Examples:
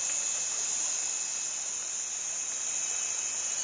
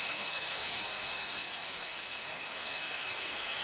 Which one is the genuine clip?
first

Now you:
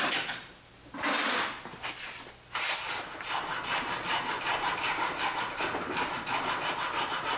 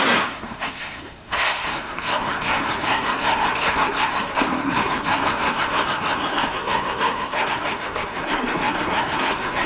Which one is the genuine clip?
first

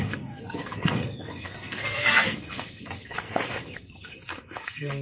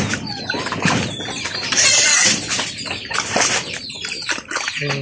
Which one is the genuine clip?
second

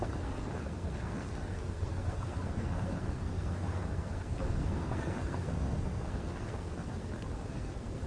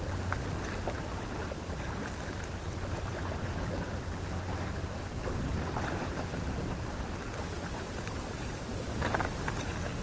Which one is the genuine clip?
second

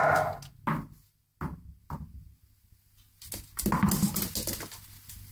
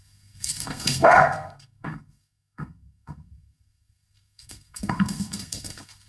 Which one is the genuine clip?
first